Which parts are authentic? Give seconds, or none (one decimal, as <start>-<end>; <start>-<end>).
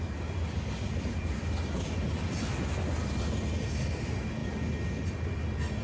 0.0-5.8